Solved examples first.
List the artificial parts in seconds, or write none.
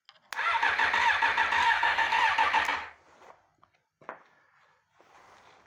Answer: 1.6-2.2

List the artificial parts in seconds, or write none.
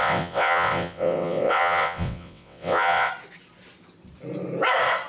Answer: 0.0-3.1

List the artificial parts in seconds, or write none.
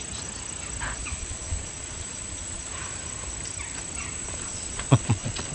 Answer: 1.0-2.7; 4.2-5.5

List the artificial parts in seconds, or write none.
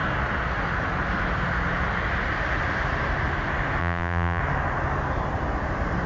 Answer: 3.8-4.4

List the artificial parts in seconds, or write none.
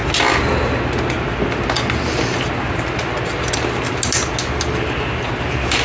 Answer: none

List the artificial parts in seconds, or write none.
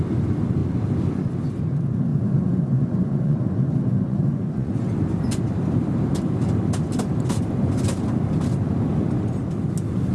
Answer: 2.1-4.9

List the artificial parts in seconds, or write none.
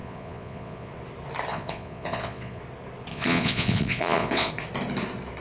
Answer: 0.0-0.9; 1.5-2.6; 3.1-4.5